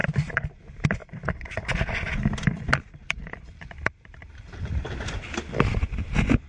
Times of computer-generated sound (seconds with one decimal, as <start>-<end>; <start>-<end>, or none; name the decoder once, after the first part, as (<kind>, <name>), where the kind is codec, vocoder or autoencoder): 0.0-0.6 (vocoder, BigVGAN v2); 1.0-4.8